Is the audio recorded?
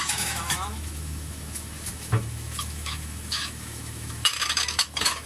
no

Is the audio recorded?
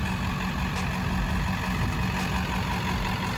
yes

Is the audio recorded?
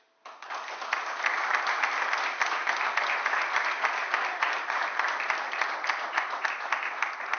yes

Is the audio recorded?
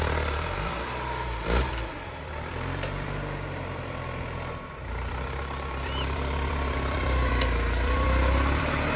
no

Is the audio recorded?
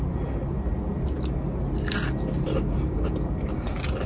yes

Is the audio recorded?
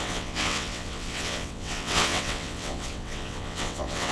no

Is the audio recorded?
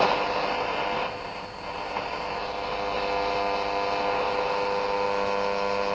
yes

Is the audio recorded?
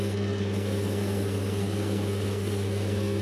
no